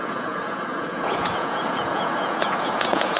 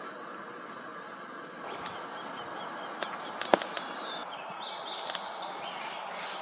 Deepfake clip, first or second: first